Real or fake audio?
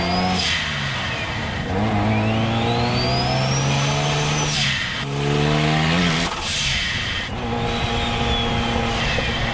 real